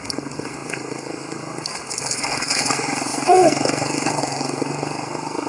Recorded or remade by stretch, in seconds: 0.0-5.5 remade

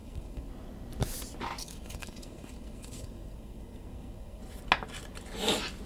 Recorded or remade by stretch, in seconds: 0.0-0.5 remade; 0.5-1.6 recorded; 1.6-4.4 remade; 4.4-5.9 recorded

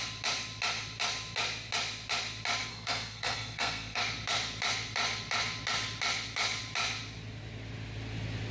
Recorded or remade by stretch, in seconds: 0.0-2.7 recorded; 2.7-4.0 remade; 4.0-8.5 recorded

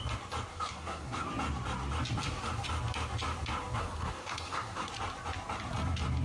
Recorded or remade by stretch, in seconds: 0.0-0.5 recorded; 0.5-1.3 remade; 1.3-3.8 recorded; 3.8-4.9 remade; 4.9-6.2 recorded

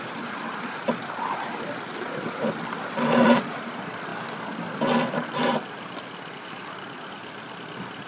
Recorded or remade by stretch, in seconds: 0.0-8.1 recorded

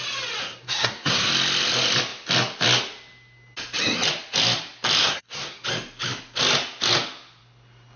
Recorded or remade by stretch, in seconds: 0.0-0.4 recorded; 0.4-1.3 remade; 1.3-5.0 recorded; 5.0-5.6 remade; 5.6-8.0 recorded

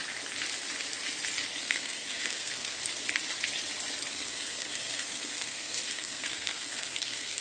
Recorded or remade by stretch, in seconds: 0.0-1.6 recorded; 1.6-2.8 remade; 2.8-4.1 recorded; 4.1-7.4 remade

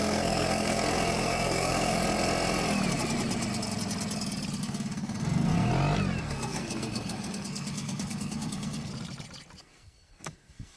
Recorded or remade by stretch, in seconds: 0.0-2.0 remade; 2.0-4.6 recorded; 4.6-5.7 remade; 5.7-6.2 recorded; 6.2-8.9 remade; 8.9-9.6 recorded; 9.6-10.8 remade